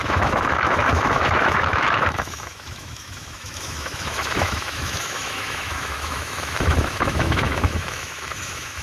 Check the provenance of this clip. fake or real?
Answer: fake